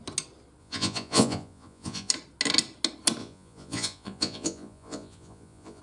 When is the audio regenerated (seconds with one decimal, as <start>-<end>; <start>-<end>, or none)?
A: 0.6-2.1; 3.2-5.8